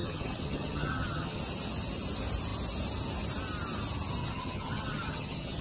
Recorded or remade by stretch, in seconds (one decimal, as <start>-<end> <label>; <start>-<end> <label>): 0.0-1.4 remade; 1.4-4.2 recorded; 4.2-5.6 remade